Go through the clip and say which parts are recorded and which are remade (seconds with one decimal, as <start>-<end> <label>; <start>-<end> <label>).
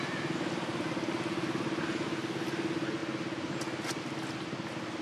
0.0-5.0 recorded